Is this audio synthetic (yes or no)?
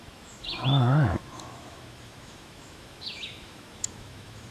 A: yes